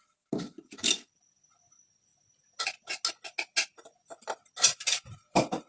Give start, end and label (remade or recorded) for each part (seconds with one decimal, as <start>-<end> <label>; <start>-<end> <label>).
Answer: 0.0-5.7 recorded